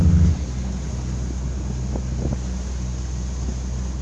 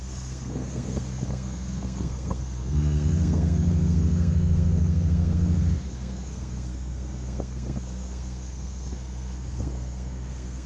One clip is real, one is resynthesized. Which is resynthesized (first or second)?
second